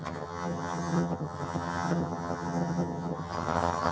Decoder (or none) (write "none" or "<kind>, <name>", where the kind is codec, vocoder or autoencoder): vocoder, HiFi-GAN